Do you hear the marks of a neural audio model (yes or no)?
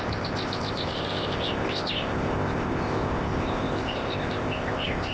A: yes